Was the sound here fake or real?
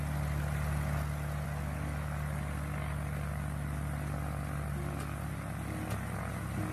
real